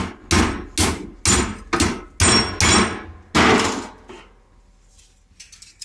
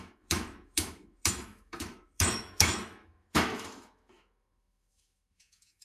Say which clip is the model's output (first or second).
second